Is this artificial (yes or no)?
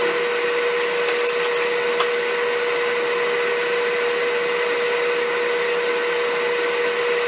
no